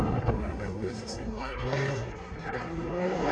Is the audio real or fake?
fake